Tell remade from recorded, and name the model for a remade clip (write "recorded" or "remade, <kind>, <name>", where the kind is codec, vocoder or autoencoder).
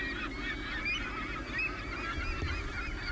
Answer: recorded